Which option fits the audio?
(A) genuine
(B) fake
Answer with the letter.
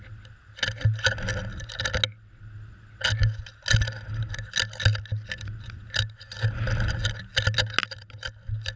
A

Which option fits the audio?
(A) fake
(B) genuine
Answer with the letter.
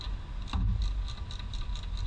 B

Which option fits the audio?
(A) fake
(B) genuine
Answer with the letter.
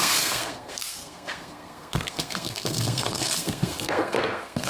A